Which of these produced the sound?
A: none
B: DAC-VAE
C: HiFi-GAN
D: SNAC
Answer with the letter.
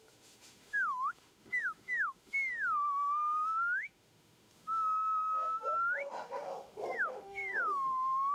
B